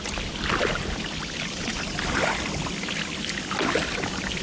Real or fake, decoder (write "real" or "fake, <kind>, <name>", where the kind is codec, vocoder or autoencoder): real